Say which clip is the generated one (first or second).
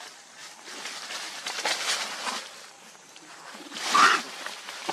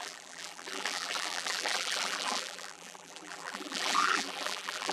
second